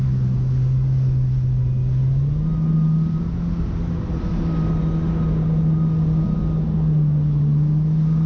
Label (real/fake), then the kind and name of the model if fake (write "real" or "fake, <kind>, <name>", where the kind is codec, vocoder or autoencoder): real